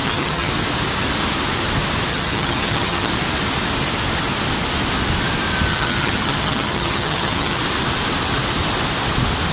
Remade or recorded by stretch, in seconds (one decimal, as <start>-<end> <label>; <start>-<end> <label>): 0.0-0.5 remade; 0.5-2.1 recorded; 2.1-3.1 remade; 3.1-5.7 recorded; 5.7-7.6 remade; 7.6-9.5 recorded